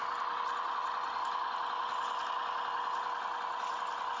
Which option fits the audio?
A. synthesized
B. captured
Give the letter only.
B